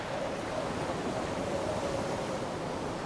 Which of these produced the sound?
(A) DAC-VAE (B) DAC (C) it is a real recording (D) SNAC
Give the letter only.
C